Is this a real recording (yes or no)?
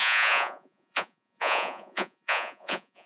no